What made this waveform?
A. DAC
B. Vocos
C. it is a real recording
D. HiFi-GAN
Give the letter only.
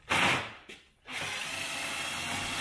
C